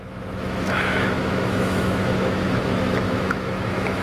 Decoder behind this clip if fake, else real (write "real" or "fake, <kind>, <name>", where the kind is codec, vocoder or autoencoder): fake, autoencoder, DAC-VAE